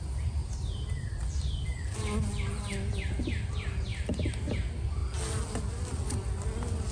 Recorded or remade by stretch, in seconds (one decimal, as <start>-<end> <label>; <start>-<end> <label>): 0.0-0.4 recorded; 0.4-1.2 remade; 1.2-3.9 recorded; 3.9-4.5 remade; 4.5-6.9 recorded